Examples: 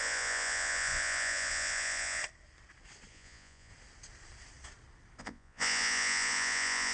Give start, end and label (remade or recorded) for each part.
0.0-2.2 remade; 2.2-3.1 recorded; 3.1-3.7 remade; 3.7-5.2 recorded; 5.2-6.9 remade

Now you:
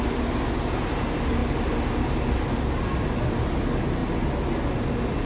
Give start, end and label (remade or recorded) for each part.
0.0-5.3 recorded

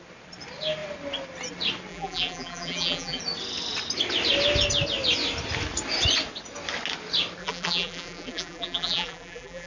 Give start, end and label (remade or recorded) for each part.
0.0-1.9 recorded; 1.9-3.2 remade; 3.2-7.4 recorded; 7.4-9.7 remade

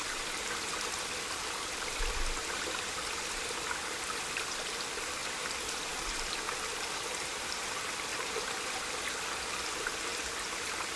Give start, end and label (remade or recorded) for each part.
0.0-11.0 recorded

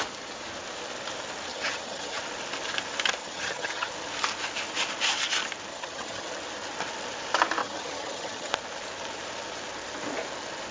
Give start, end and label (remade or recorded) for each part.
0.0-1.5 recorded; 1.5-2.2 remade; 2.2-3.2 recorded; 3.2-3.9 remade; 3.9-5.7 recorded; 5.7-6.3 remade; 6.3-7.6 recorded; 7.6-8.5 remade; 8.5-10.7 recorded

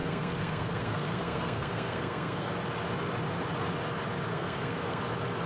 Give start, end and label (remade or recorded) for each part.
0.0-2.5 remade; 2.5-4.3 recorded; 4.3-5.0 remade; 5.0-5.5 recorded

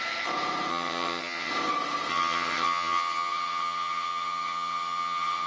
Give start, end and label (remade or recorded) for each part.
0.0-0.7 recorded; 0.7-1.5 remade; 1.5-2.1 recorded; 2.1-5.5 remade

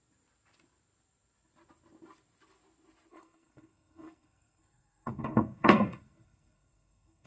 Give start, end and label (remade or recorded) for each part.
0.0-3.1 recorded; 3.1-7.3 remade